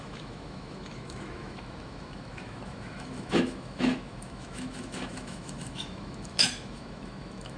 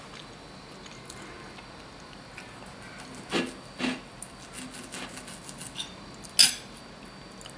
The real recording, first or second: second